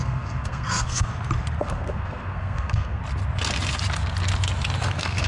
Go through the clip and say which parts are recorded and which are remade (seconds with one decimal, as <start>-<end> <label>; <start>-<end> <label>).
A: 0.0-1.1 remade; 1.1-1.6 recorded; 1.6-3.0 remade; 3.0-4.8 recorded; 4.8-5.3 remade